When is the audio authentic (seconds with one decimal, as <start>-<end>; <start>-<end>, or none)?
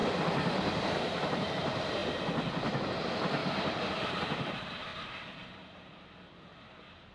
0.9-3.4; 4.0-4.9; 5.9-7.1